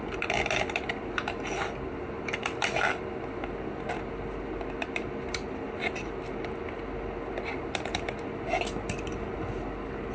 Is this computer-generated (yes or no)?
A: no